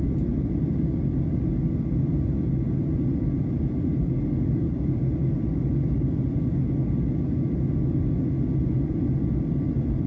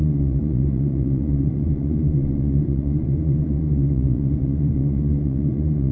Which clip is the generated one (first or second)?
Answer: second